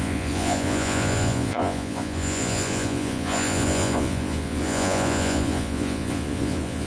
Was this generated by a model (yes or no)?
yes